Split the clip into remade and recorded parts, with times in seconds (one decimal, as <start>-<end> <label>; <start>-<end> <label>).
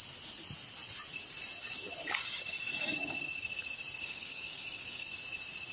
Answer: 0.0-4.0 recorded; 4.0-5.1 remade; 5.1-5.7 recorded